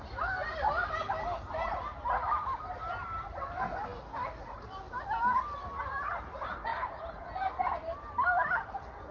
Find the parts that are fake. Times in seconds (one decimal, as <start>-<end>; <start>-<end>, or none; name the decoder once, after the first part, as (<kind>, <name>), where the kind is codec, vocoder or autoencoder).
none